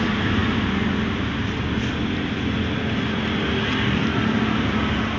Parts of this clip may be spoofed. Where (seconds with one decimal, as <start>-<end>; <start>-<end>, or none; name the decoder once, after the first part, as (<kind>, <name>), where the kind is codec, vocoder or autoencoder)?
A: none